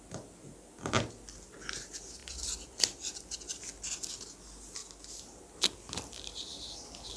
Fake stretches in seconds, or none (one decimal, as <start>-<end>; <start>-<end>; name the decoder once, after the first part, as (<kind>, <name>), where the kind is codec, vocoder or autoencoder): none